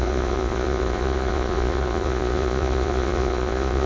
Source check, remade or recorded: remade